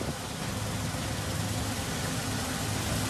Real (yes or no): yes